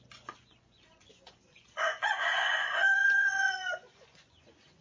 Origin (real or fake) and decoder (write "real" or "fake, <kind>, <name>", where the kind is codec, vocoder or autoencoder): fake, vocoder, Vocos